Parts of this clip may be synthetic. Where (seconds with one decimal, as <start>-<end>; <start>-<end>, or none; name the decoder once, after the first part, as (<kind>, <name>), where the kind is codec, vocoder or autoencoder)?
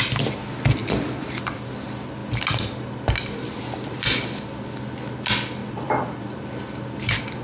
0.8-1.7 (vocoder, BigVGAN v2); 2.2-3.6; 5.6-6.6